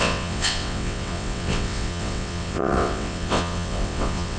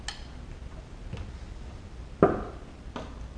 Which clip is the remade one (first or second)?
first